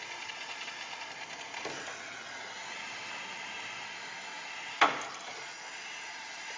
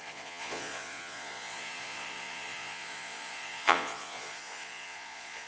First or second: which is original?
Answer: first